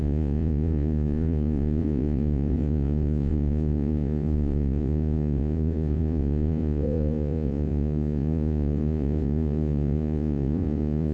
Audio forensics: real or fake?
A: fake